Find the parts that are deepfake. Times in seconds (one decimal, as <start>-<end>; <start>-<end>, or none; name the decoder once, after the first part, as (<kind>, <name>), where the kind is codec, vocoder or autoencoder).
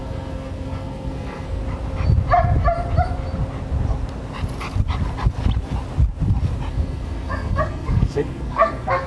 0.0-1.6 (codec, SNAC); 6.7-9.1